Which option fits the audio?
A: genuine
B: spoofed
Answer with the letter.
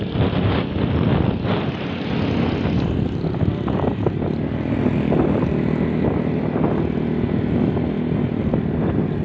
A